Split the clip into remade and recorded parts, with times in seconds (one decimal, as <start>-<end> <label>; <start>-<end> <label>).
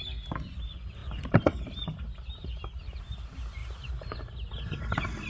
0.0-5.3 recorded